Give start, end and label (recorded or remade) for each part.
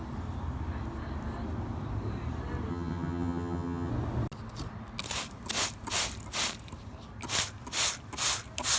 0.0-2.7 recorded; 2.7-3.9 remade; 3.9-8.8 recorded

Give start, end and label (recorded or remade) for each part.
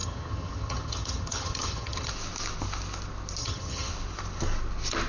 0.0-2.1 remade; 2.1-3.4 recorded; 3.4-3.9 remade; 3.9-5.1 recorded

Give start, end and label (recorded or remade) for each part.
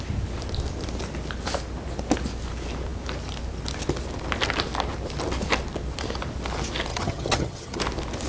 0.0-6.9 recorded; 6.9-7.8 remade; 7.8-8.3 recorded